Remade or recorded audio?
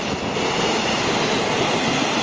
recorded